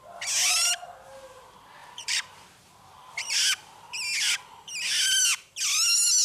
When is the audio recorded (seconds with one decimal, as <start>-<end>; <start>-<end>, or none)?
0.0-1.8; 3.4-6.2

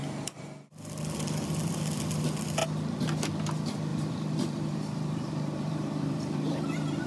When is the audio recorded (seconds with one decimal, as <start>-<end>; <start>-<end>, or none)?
0.0-3.9

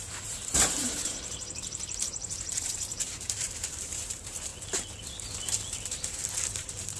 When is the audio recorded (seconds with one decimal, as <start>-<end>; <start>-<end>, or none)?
4.5-6.1

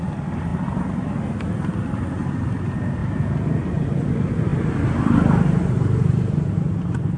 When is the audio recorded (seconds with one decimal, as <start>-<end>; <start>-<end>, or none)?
0.0-4.5

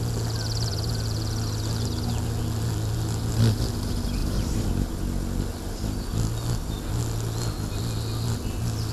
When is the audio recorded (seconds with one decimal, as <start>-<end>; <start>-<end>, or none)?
0.0-4.2; 4.7-8.9

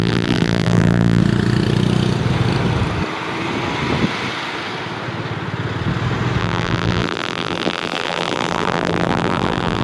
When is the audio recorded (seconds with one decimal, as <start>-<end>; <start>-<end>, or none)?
1.2-6.4

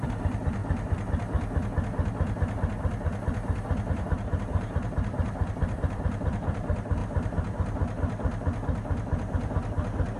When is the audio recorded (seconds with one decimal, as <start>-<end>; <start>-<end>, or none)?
0.6-3.9; 7.0-10.2

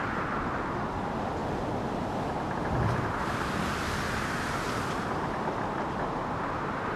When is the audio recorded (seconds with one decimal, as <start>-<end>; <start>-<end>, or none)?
0.0-7.0